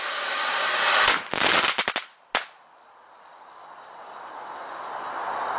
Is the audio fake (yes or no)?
no